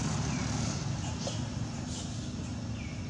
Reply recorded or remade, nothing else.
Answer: recorded